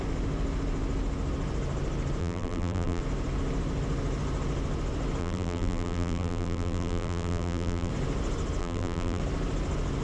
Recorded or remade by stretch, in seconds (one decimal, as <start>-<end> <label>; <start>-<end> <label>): 0.0-2.2 recorded; 2.2-3.0 remade; 3.0-5.2 recorded; 5.2-7.9 remade; 7.9-8.6 recorded; 8.6-9.2 remade; 9.2-10.0 recorded